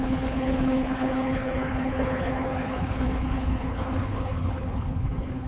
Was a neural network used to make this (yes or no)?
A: yes